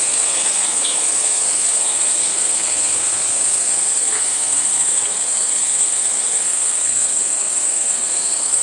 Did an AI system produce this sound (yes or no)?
yes